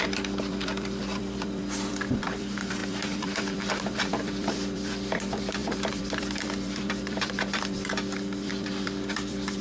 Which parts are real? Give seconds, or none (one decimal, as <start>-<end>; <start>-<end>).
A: none